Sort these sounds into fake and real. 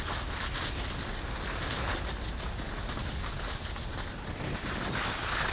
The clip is real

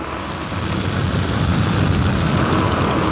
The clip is real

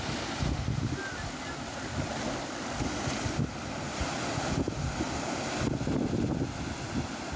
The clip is real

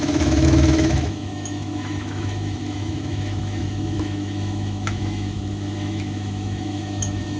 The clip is fake